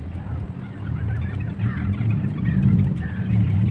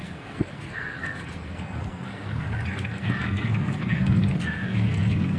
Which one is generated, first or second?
second